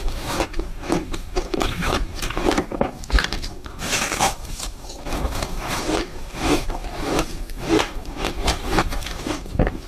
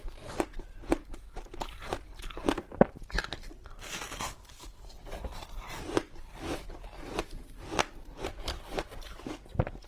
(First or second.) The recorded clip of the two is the second